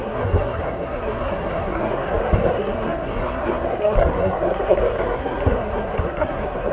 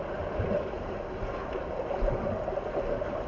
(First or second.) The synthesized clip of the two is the first